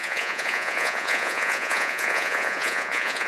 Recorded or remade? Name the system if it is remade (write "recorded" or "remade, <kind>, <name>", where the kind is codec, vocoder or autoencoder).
remade, vocoder, Vocos